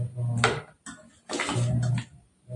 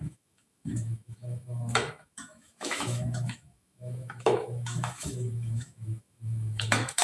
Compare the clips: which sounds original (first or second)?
first